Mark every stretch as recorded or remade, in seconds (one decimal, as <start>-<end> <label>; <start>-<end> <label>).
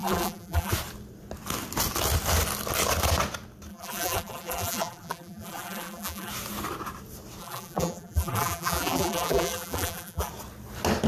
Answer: 0.0-0.7 remade; 0.7-3.7 recorded; 3.7-6.3 remade; 6.3-7.4 recorded; 7.4-10.3 remade; 10.3-11.1 recorded